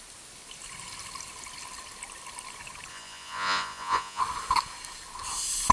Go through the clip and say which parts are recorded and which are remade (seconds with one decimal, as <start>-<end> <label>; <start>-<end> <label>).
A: 0.0-2.9 recorded; 2.9-4.2 remade; 4.2-5.7 recorded